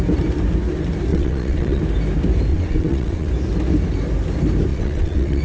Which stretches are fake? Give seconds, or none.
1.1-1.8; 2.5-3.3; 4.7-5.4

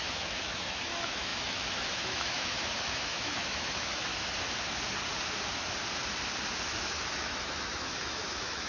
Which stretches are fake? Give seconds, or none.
0.0-4.1; 6.8-8.7